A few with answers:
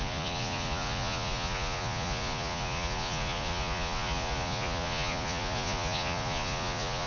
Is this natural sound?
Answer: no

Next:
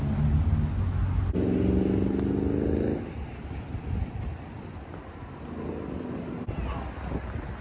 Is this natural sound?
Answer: yes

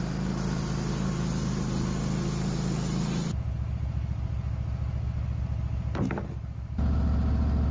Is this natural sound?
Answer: yes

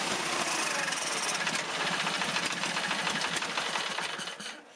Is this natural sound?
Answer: yes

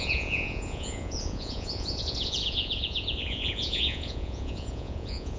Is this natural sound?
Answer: no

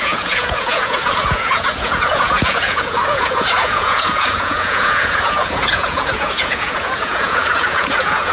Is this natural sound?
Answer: no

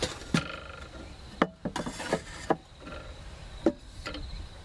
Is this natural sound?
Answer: yes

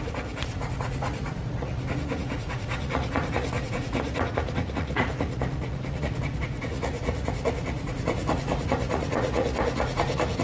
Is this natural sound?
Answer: no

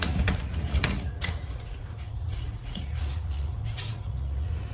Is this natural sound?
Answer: no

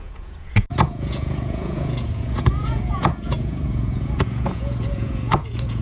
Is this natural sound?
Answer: no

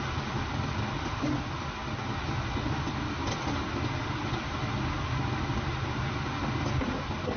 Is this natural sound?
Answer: yes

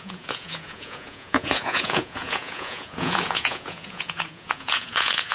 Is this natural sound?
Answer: no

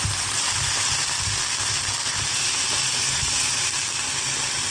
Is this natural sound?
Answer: yes